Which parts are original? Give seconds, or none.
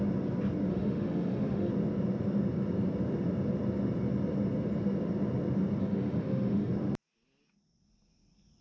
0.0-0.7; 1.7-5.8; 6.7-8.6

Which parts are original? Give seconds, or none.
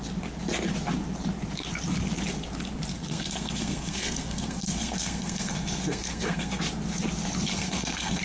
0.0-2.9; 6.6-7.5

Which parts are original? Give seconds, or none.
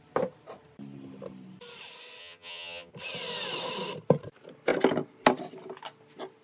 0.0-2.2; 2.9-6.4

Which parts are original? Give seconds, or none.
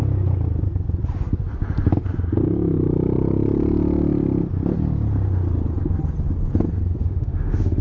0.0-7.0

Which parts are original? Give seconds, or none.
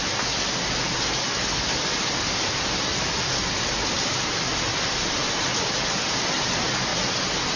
0.0-7.6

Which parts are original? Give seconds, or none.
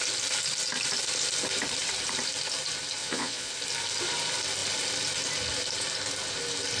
0.0-3.0; 3.5-6.8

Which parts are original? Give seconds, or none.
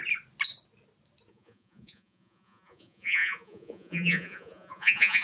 0.0-1.3